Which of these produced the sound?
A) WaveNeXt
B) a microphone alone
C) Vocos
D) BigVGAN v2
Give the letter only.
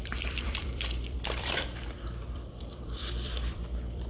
D